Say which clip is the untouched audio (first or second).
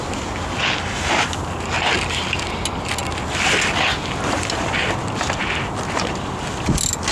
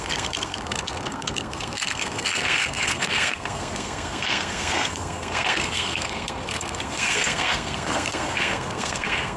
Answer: first